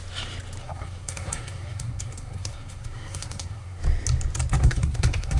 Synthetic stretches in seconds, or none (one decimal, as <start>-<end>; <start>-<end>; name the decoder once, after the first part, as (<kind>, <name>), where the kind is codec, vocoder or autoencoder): 0.6-3.8 (codec, SNAC); 4.6-5.4